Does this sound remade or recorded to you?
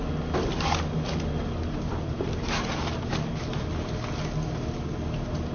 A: recorded